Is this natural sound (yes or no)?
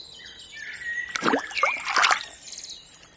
yes